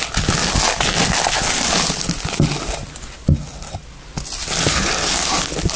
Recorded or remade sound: recorded